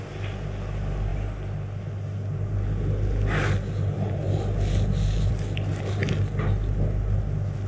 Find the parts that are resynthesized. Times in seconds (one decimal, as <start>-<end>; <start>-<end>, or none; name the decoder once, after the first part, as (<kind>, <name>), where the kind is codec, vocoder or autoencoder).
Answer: none